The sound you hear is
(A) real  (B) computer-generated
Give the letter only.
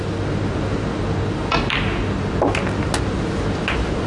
A